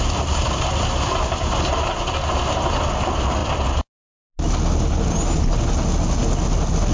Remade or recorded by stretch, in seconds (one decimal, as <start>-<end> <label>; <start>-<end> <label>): 0.0-6.9 recorded